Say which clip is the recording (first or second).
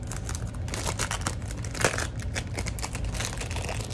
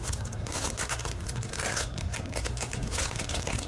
first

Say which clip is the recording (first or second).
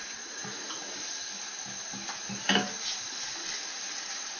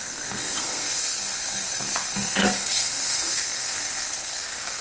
first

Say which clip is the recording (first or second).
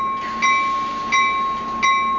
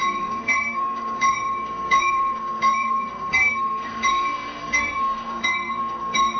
first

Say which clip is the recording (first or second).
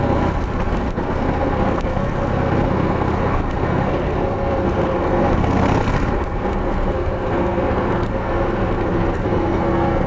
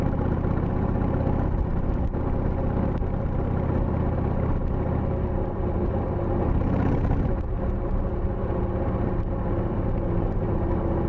second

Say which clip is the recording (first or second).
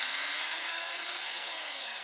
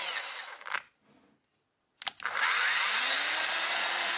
second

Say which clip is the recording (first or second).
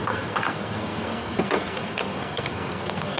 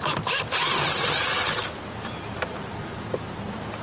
second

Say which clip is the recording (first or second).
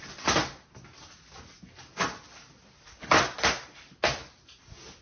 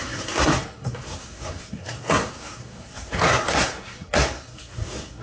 first